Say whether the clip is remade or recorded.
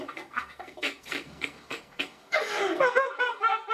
remade